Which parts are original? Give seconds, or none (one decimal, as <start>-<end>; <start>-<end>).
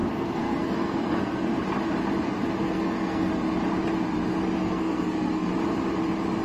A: 1.5-2.6; 3.3-4.6; 5.5-6.4